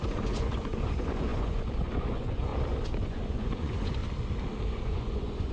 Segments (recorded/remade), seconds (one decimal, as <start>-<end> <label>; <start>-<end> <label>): 0.0-2.5 remade; 2.5-3.0 recorded; 3.0-4.0 remade; 4.0-4.7 recorded; 4.7-5.5 remade